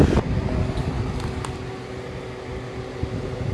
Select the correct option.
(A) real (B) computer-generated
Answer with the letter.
A